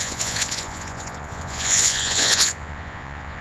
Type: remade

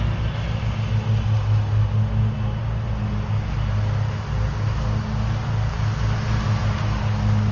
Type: recorded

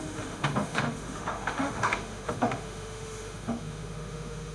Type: remade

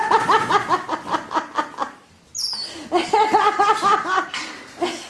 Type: recorded